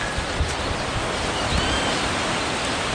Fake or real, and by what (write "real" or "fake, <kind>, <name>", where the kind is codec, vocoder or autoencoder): real